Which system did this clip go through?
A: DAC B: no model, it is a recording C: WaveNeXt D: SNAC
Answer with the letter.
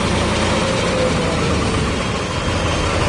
B